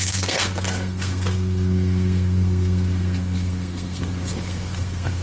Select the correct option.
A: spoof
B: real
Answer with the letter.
A